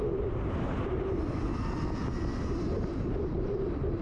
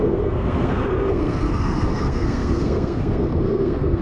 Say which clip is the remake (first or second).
second